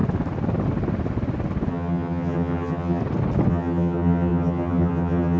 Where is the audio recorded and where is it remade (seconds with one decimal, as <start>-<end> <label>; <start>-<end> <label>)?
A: 0.0-1.7 recorded; 1.7-3.0 remade; 3.0-3.5 recorded; 3.5-5.4 remade